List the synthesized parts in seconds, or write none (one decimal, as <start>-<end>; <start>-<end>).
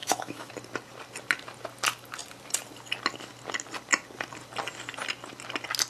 0.0-0.5